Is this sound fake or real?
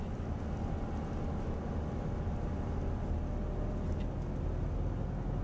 real